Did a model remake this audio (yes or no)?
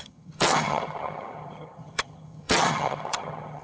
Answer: yes